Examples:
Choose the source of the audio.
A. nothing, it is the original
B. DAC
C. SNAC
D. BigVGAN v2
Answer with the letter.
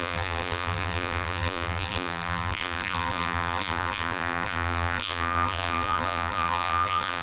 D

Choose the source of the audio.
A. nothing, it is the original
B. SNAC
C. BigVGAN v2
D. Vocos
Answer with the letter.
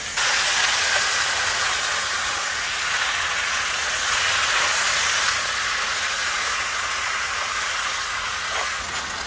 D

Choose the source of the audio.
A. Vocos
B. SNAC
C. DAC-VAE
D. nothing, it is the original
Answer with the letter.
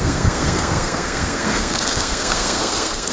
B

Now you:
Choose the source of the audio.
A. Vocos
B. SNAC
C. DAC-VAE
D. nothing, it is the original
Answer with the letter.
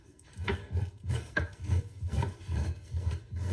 B